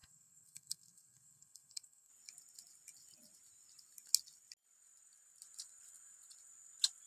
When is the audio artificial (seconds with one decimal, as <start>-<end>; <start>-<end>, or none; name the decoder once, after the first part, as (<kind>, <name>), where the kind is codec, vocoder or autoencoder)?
0.0-2.1 (codec, SNAC)